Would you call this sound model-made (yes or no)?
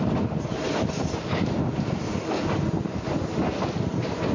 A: no